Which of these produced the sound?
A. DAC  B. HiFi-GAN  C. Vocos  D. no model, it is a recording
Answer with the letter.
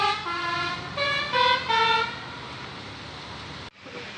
D